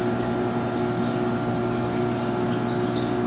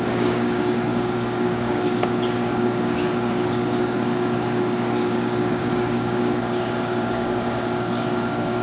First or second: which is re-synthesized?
second